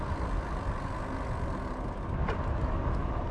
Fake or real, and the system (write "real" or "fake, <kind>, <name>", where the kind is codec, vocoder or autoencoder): real